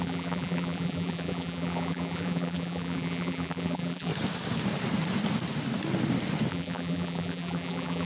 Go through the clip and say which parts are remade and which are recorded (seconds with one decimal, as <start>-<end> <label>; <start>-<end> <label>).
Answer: 0.0-4.1 remade; 4.1-6.5 recorded; 6.5-8.0 remade